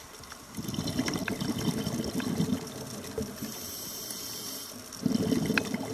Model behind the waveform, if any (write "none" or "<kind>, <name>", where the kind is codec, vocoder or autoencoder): none